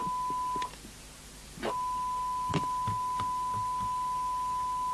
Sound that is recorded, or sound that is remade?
recorded